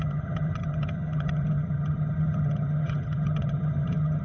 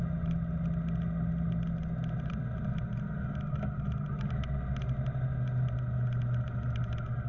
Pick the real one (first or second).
second